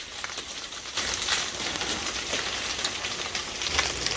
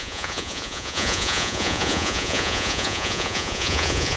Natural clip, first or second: first